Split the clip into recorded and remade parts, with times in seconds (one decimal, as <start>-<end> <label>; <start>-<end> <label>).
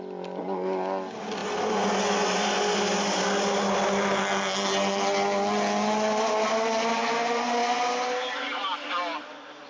0.0-9.7 recorded